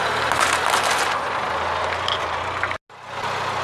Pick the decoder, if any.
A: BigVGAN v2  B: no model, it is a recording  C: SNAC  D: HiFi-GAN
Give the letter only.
B